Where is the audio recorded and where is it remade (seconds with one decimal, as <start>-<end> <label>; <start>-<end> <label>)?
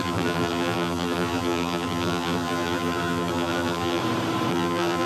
0.0-4.0 remade; 4.0-4.5 recorded; 4.5-5.1 remade